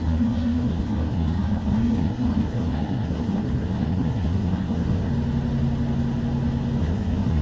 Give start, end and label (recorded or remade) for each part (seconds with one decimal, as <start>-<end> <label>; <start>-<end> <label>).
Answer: 0.0-5.1 remade; 5.1-6.8 recorded; 6.8-7.4 remade